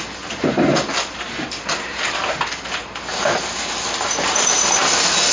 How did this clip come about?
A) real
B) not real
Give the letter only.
A